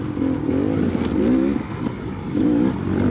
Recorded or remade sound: recorded